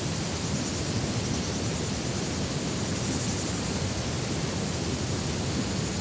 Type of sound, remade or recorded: recorded